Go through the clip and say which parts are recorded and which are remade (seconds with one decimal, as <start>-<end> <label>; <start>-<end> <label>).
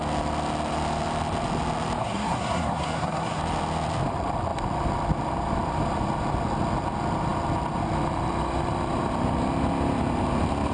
0.0-2.0 recorded; 2.0-3.4 remade; 3.4-10.7 recorded